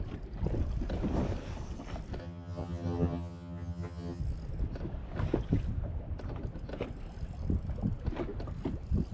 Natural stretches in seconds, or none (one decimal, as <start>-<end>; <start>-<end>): 0.0-2.2; 4.2-9.1